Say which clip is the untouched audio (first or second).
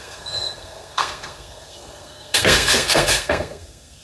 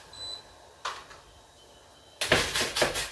second